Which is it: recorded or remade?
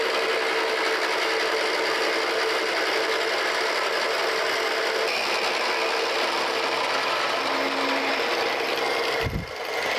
recorded